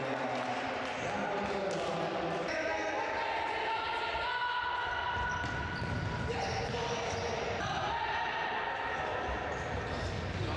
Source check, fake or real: real